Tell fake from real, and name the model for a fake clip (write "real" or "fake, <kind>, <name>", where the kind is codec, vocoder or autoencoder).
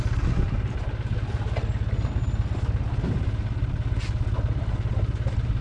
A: real